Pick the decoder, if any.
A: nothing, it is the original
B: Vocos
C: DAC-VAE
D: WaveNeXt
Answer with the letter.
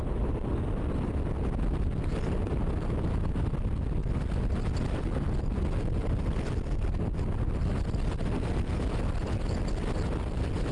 A